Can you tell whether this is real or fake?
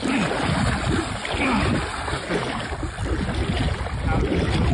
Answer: real